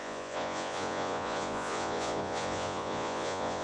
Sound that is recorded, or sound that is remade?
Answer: remade